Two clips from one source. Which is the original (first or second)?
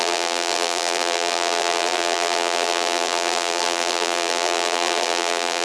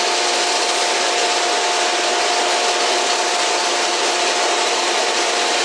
second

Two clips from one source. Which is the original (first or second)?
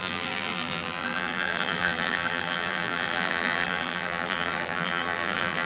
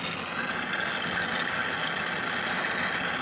second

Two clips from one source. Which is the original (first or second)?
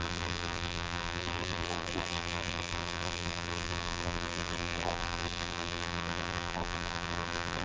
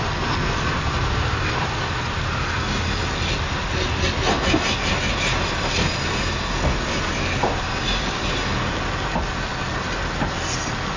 second